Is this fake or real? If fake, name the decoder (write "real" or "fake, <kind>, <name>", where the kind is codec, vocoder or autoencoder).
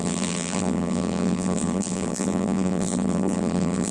fake, vocoder, BigVGAN v2